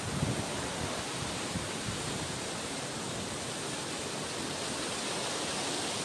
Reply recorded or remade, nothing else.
recorded